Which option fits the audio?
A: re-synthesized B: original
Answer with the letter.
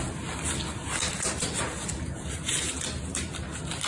B